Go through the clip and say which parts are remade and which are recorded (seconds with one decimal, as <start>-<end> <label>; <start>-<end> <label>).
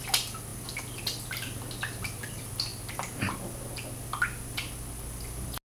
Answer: 0.0-5.7 recorded